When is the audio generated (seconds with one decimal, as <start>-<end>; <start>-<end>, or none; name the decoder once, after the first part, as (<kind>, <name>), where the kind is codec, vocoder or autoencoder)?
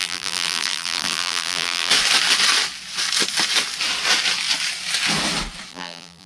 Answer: 0.0-1.9 (vocoder, BigVGAN v2); 5.7-6.3